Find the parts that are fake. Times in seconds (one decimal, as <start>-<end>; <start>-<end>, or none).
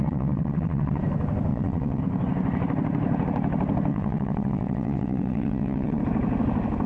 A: 0.0-1.0; 1.5-2.0; 3.9-6.0